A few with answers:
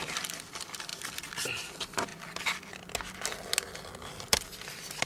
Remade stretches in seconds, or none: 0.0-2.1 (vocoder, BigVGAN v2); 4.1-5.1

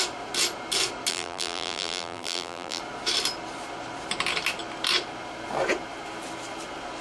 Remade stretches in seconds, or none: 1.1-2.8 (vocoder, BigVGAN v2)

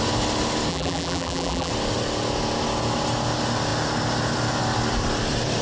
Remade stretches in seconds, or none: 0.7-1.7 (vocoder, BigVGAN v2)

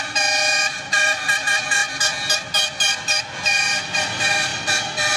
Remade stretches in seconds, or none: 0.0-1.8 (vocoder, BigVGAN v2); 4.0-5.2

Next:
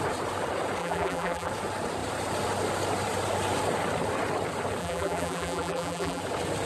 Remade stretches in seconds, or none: 0.8-1.5 (vocoder, BigVGAN v2); 4.8-6.2